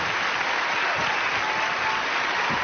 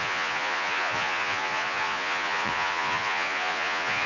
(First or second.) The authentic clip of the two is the first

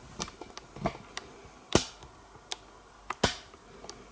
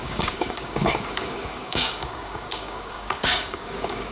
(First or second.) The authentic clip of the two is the first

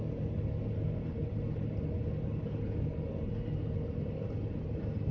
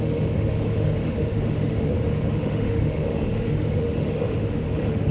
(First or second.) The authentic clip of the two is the first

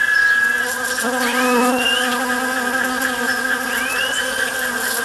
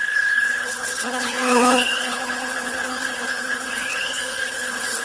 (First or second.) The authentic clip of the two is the first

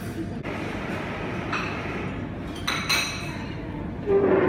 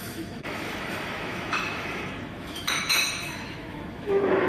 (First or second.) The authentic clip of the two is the first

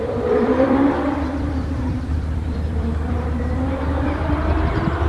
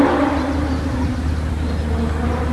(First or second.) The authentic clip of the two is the second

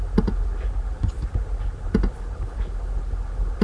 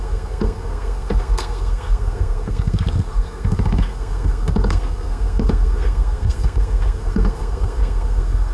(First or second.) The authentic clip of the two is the first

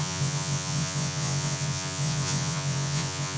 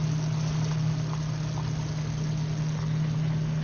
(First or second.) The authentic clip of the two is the second